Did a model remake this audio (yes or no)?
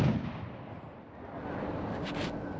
no